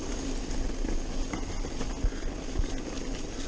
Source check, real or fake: real